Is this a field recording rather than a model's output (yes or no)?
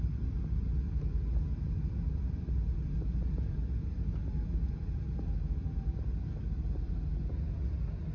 yes